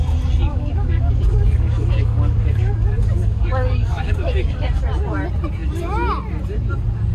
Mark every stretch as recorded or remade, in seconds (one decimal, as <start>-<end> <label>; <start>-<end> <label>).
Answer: 0.0-0.5 recorded; 0.5-4.8 remade; 4.8-7.1 recorded